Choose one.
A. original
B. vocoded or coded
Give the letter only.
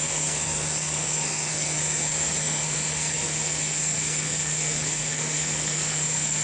B